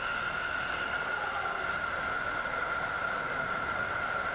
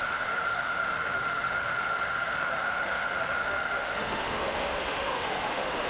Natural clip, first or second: first